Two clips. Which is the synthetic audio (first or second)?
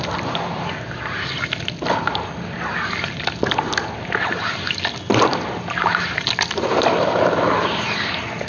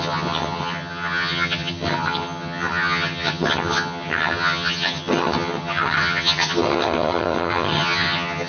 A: second